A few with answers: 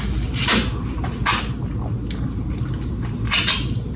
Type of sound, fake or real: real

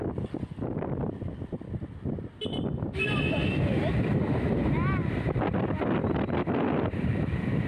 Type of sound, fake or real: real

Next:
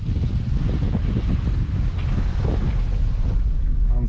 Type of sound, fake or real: real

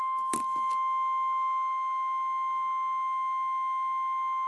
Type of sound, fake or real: real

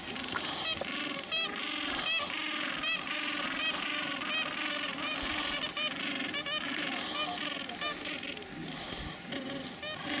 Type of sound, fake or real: real